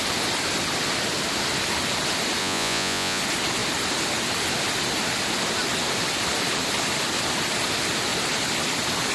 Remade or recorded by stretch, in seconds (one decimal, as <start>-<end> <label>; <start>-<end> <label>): 0.0-2.4 recorded; 2.4-3.2 remade; 3.2-9.1 recorded